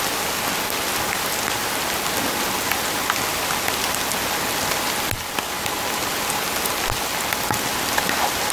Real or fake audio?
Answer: real